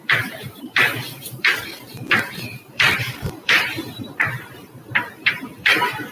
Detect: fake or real fake